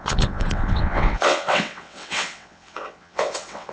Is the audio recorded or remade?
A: remade